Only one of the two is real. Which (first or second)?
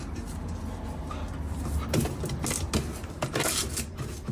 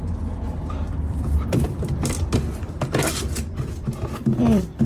first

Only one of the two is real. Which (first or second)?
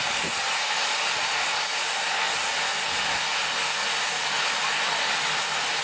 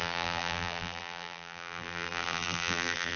first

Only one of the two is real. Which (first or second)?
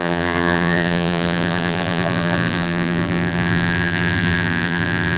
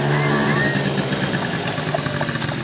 second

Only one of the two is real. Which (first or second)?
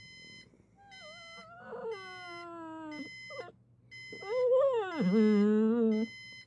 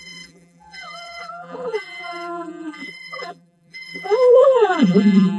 first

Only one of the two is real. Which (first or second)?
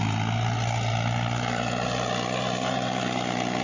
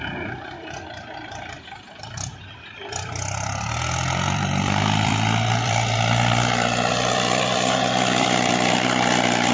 first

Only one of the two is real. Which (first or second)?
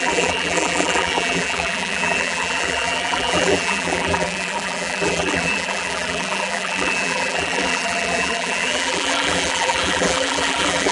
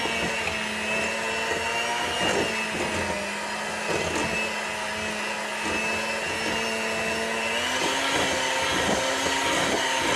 second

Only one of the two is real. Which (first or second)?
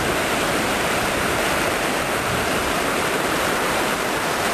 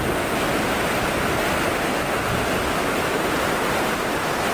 second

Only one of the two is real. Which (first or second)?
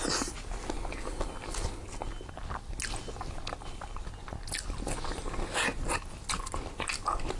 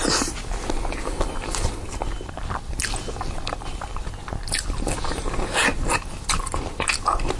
first